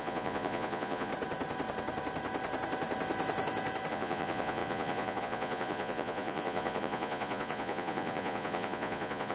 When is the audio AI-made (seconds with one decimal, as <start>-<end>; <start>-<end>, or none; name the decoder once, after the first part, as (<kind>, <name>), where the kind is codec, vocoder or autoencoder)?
0.0-1.1 (vocoder, Vocos); 3.9-9.3